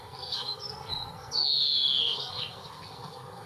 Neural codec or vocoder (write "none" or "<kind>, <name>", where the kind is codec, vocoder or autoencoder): codec, SNAC